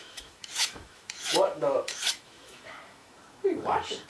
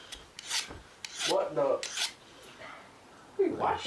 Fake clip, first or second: first